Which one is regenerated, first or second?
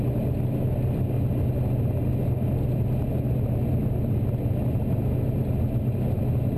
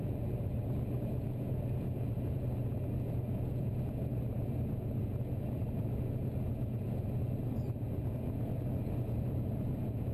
second